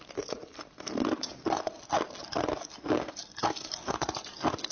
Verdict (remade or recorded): recorded